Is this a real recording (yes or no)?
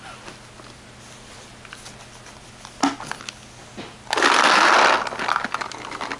yes